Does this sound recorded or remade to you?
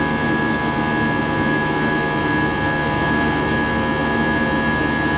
recorded